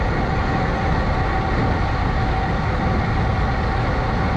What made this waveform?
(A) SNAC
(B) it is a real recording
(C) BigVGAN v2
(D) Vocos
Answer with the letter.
B